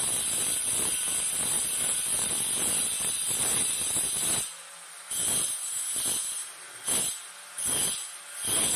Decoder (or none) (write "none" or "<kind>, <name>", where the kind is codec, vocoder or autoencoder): none